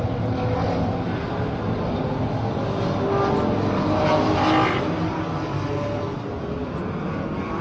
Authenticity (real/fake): real